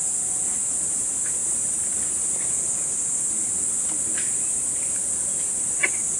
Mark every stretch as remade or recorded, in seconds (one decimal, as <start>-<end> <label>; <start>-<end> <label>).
0.0-6.2 recorded